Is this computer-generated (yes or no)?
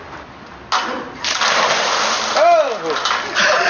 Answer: no